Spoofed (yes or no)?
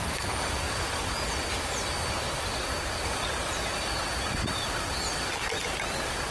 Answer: no